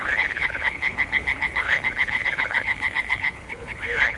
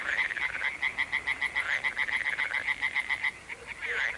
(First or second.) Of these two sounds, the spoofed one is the first